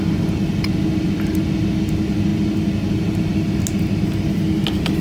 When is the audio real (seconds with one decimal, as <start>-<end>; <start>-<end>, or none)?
0.0-5.0